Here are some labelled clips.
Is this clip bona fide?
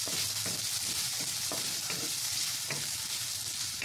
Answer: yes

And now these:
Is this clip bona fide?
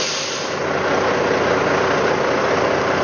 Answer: yes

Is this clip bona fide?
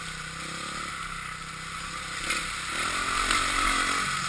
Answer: yes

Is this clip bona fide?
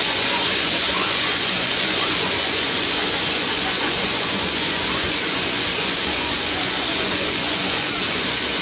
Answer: no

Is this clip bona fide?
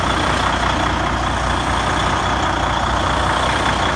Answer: yes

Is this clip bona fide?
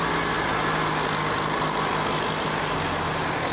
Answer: yes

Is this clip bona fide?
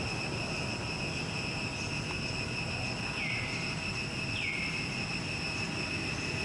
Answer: yes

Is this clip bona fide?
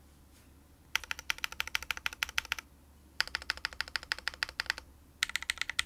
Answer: yes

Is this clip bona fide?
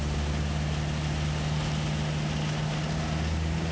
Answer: yes